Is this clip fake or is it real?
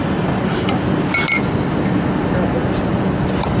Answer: real